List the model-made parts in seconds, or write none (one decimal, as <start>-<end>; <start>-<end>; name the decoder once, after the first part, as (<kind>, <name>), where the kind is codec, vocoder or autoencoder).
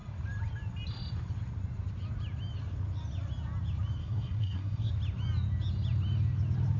4.0-4.9 (codec, SNAC)